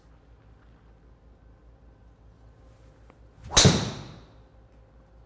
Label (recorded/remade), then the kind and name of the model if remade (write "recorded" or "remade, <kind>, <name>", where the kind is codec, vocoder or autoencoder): recorded